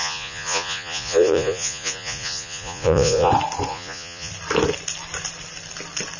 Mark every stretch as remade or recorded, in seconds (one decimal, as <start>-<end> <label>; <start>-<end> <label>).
0.0-3.3 remade; 3.3-3.7 recorded; 3.7-4.3 remade; 4.3-6.2 recorded